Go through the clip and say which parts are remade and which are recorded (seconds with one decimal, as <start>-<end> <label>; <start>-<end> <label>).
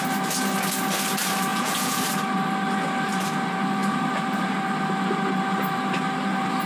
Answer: 0.0-1.5 recorded; 1.5-2.0 remade; 2.0-6.7 recorded